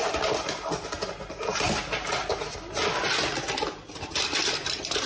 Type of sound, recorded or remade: recorded